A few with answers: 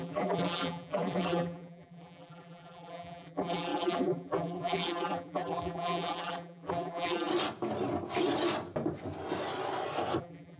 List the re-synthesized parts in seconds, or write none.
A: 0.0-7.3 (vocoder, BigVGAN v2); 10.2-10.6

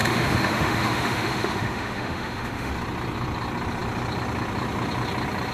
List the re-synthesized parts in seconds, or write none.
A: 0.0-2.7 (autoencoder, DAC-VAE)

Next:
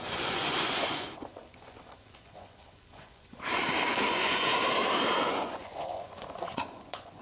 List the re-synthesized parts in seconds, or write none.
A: 0.0-3.6 (vocoder, Vocos); 4.1-4.5; 5.3-7.2

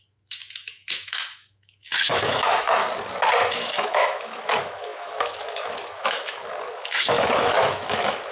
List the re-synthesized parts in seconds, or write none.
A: 0.0-2.8 (autoencoder, DAC-VAE); 3.5-8.3